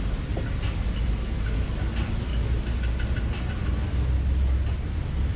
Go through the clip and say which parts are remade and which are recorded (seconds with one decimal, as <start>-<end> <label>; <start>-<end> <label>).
0.0-2.3 remade; 2.3-5.0 recorded; 5.0-5.4 remade